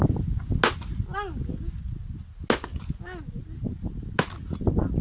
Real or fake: real